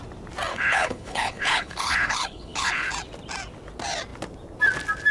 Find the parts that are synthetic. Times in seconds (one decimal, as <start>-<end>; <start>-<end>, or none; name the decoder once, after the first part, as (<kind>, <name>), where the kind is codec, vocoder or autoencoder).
0.5-2.9 (codec, HILCodec)